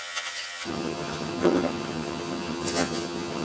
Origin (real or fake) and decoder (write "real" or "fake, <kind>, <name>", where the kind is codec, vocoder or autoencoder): fake, vocoder, HiFi-GAN